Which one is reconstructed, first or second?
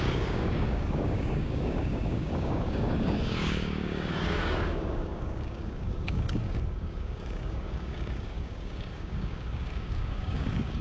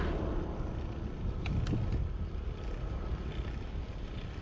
first